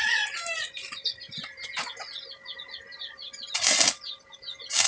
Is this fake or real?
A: real